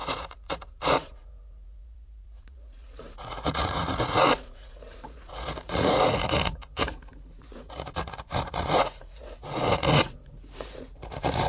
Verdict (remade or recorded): remade